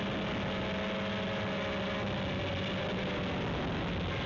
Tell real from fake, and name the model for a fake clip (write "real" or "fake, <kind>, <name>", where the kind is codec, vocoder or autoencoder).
real